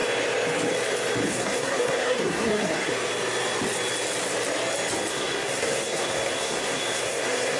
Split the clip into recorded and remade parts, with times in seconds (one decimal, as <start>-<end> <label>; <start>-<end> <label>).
0.0-1.3 recorded; 1.3-2.9 remade; 2.9-5.1 recorded; 5.1-7.6 remade